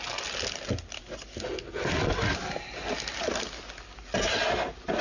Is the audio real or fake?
real